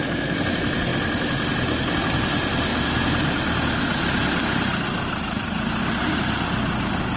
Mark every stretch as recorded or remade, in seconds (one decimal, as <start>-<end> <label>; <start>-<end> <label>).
0.0-0.9 remade; 0.9-2.0 recorded; 2.0-2.7 remade; 2.7-7.2 recorded